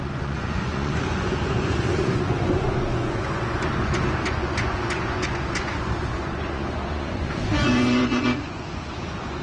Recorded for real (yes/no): no